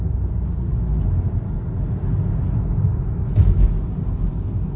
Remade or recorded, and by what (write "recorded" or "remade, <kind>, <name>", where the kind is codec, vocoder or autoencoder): recorded